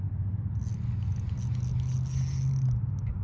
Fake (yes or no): no